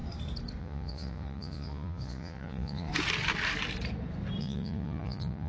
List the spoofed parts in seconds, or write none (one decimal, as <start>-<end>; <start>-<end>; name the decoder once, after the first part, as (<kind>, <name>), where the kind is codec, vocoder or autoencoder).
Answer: 0.6-2.9 (vocoder, Vocos); 4.4-5.5